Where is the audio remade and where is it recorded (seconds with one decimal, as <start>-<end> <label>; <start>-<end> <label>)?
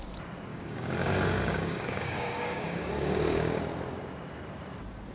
0.0-0.5 recorded; 0.5-3.6 remade; 3.6-5.1 recorded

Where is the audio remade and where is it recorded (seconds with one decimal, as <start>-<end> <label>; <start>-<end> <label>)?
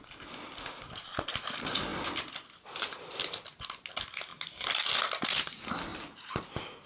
0.0-6.9 recorded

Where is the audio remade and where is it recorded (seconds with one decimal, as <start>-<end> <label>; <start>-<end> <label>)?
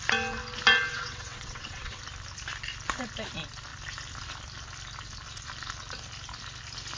0.0-0.9 recorded; 0.9-2.0 remade; 2.0-7.0 recorded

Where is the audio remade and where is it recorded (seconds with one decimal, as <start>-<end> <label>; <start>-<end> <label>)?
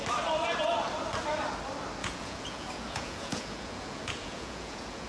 0.0-2.0 recorded; 2.0-5.1 remade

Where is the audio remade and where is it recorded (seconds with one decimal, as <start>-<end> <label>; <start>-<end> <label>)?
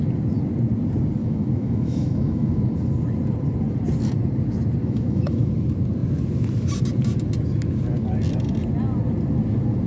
0.0-1.2 recorded; 1.2-2.6 remade; 2.6-4.8 recorded; 4.8-5.5 remade; 5.5-9.9 recorded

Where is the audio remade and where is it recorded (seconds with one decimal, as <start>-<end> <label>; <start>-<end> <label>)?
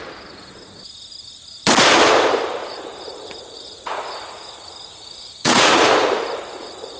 0.0-2.6 recorded; 2.6-7.0 remade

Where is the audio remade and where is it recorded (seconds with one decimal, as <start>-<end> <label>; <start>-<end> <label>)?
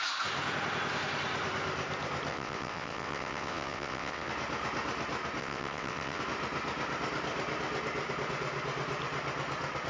0.0-2.3 recorded; 2.3-4.3 remade; 4.3-5.4 recorded; 5.4-6.2 remade; 6.2-9.9 recorded